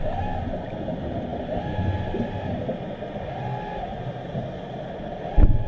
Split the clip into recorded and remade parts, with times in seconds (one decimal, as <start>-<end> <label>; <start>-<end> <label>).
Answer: 0.0-5.7 recorded